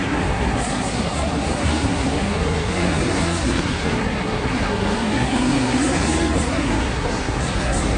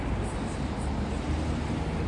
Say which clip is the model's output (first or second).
first